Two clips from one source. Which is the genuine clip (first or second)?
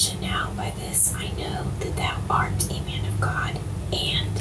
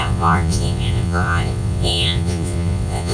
first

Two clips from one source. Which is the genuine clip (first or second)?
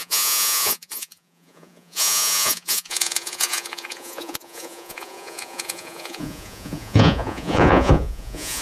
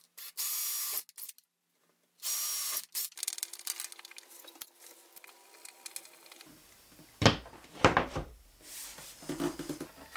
second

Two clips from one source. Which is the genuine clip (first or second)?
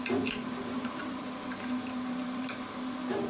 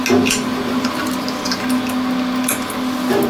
second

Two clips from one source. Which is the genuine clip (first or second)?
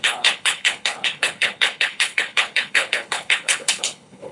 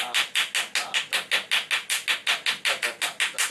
second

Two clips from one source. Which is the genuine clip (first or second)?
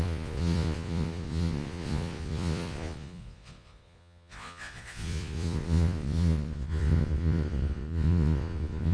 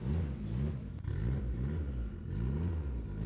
second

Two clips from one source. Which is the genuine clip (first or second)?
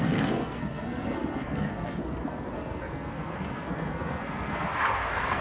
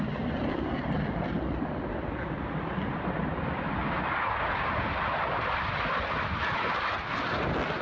second